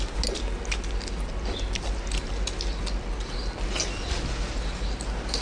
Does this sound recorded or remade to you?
recorded